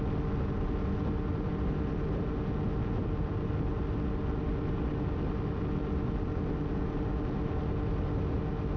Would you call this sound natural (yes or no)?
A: yes